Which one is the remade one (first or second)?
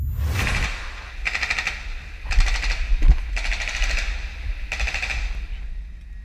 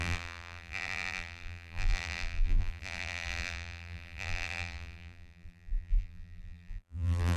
second